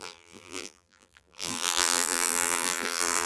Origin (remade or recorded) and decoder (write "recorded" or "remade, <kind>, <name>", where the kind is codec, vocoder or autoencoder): remade, vocoder, BigVGAN v2